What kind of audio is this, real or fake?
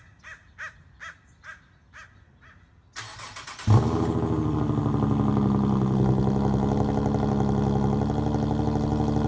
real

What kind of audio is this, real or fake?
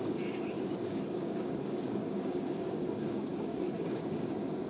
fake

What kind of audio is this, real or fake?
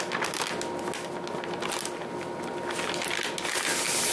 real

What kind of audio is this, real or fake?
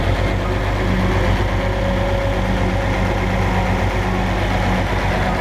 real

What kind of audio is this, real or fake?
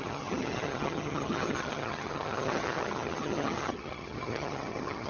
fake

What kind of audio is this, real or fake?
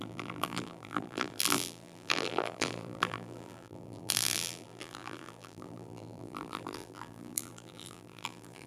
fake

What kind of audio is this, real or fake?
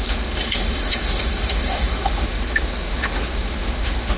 fake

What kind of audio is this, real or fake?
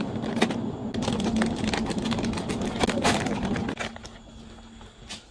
real